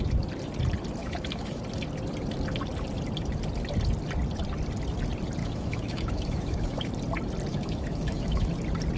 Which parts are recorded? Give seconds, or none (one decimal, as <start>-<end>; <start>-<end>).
0.0-1.0; 1.6-5.4; 6.9-7.5; 8.5-9.0